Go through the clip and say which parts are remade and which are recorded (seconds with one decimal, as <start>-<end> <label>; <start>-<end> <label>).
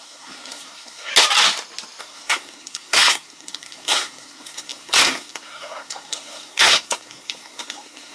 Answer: 0.0-1.1 remade; 1.1-2.0 recorded; 2.0-8.1 remade